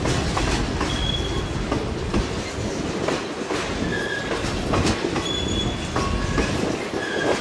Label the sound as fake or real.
real